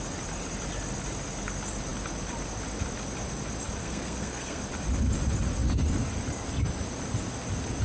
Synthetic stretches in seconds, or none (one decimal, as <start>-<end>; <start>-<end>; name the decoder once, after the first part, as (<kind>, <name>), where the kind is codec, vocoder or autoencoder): 3.8-4.6 (codec, SNAC)